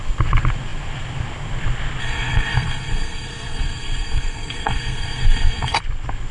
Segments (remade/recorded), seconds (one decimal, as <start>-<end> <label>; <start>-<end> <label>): 0.0-2.0 recorded; 2.0-5.8 remade; 5.8-6.3 recorded